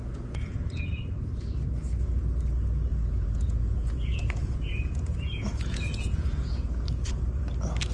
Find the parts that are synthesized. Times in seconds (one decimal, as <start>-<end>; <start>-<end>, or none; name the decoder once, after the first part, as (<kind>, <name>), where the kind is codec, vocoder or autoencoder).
0.0-1.0 (vocoder, Vocos); 2.9-6.7